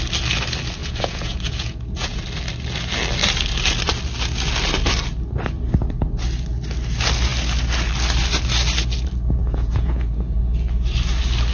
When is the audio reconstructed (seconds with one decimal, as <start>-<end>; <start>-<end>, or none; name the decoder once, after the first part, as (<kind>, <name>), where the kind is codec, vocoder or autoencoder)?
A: 0.8-2.2 (vocoder, Vocos); 9.4-10.4